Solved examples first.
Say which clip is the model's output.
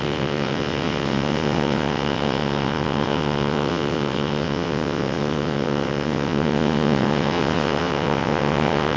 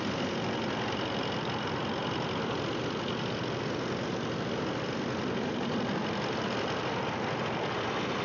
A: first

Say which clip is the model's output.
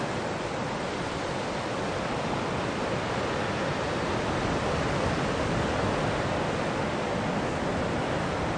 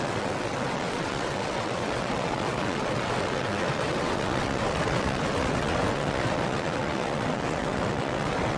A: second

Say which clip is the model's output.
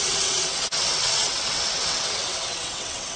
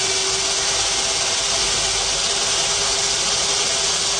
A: first